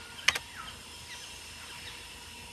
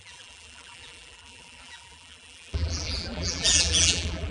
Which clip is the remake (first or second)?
second